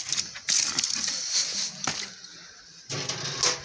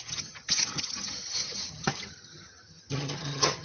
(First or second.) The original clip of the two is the first